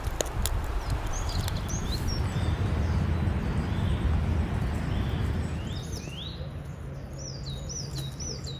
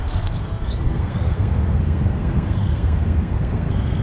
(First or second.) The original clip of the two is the first